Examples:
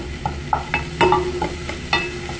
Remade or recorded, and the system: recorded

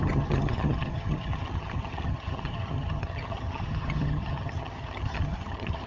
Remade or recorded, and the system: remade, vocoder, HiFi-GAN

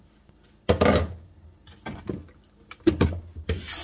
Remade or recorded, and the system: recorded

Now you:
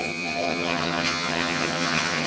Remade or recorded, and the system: remade, vocoder, HiFi-GAN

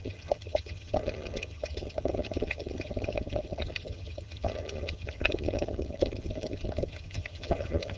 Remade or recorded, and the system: remade, vocoder, HiFi-GAN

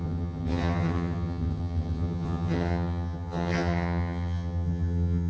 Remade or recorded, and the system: remade, vocoder, HiFi-GAN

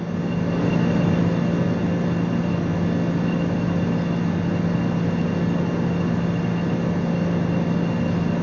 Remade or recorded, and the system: recorded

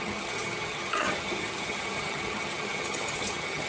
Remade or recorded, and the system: remade, vocoder, HiFi-GAN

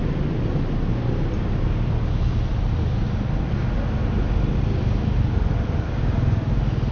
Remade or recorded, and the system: recorded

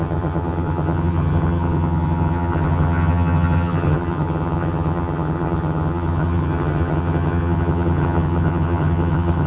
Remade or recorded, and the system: remade, vocoder, HiFi-GAN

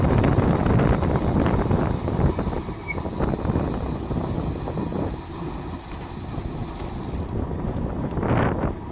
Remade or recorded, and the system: recorded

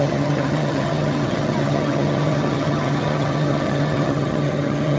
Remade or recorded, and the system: remade, vocoder, HiFi-GAN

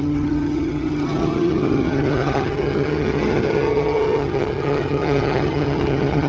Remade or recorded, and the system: remade, vocoder, HiFi-GAN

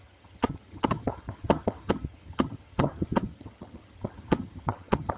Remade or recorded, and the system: remade, vocoder, HiFi-GAN